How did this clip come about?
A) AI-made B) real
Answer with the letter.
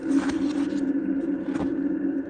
B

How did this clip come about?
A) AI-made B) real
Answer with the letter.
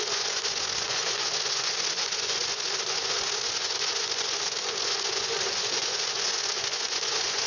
A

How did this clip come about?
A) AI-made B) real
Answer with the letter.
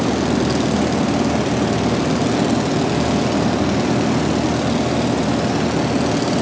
B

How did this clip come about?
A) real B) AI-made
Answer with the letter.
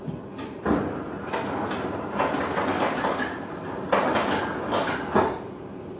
A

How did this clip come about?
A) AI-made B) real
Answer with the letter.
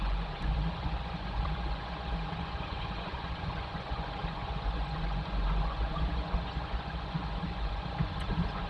A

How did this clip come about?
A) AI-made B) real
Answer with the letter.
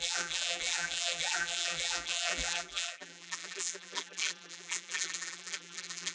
A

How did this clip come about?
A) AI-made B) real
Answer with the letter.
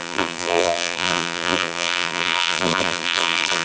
A